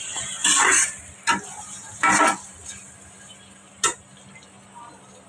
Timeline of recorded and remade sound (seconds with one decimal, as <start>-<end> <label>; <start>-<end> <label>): 0.0-0.4 recorded; 0.4-0.9 remade; 0.9-5.3 recorded